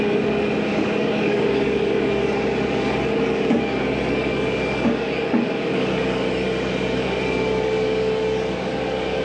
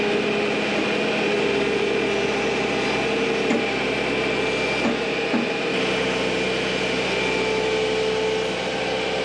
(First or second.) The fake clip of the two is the first